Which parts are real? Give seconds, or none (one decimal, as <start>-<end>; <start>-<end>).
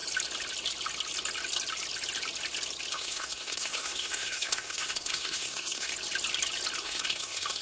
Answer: 0.0-2.9; 5.9-6.8